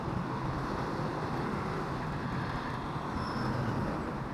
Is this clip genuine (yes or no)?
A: yes